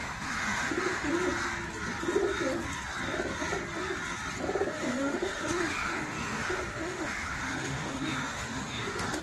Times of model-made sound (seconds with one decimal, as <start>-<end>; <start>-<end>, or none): 0.0-1.1; 4.7-9.2

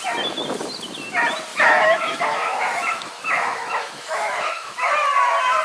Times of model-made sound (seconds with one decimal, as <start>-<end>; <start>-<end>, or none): 1.5-4.9

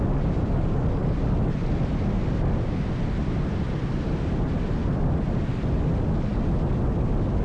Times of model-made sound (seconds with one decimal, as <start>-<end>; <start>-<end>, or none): none

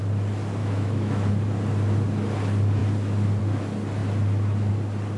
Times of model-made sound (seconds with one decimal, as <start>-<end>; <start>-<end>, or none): 0.6-1.3

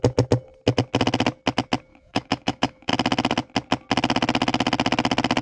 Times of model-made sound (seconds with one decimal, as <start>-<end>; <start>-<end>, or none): 1.9-2.9

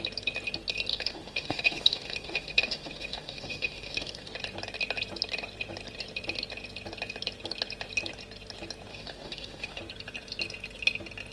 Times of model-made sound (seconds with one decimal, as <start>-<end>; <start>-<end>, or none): 0.9-4.3; 8.9-9.8